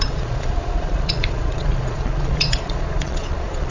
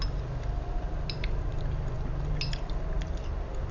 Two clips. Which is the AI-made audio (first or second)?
first